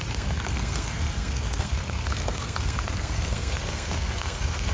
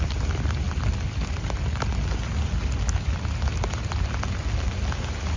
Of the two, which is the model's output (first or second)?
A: first